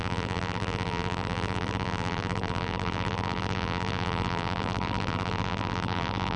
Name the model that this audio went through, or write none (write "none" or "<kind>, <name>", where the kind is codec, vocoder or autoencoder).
vocoder, BigVGAN v2